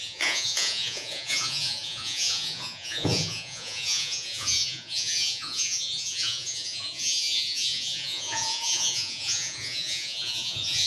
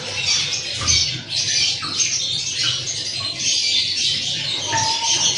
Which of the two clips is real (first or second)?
second